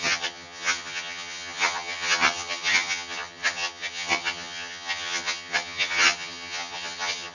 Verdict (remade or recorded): remade